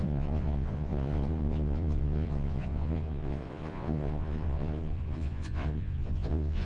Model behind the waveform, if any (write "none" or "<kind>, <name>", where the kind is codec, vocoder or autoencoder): vocoder, Vocos